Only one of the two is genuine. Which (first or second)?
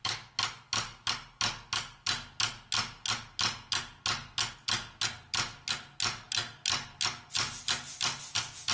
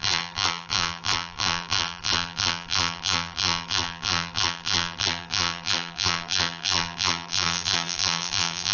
first